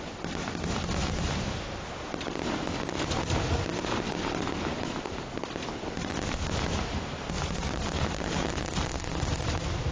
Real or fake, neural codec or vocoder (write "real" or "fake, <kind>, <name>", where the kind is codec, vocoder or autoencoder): real